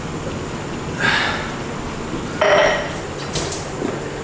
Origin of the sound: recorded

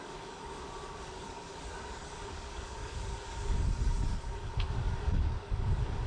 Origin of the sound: remade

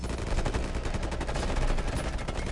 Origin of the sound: recorded